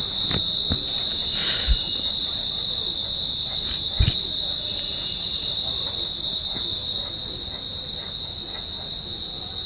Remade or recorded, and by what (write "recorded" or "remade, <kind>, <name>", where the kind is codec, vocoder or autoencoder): recorded